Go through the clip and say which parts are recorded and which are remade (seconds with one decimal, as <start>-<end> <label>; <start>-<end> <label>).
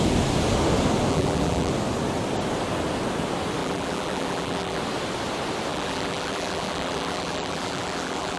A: 0.0-1.1 recorded; 1.1-1.7 remade; 1.7-3.6 recorded; 3.6-4.8 remade; 4.8-5.7 recorded; 5.7-8.4 remade